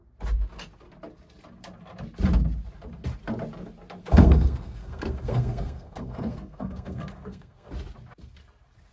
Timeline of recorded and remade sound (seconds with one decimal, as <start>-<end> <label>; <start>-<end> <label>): 0.0-4.0 recorded; 4.0-7.7 remade; 7.7-8.9 recorded